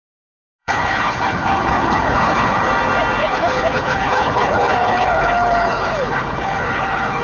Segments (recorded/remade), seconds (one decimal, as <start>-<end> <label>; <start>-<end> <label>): 0.0-0.6 recorded; 0.6-2.7 remade; 2.7-3.2 recorded; 3.2-7.2 remade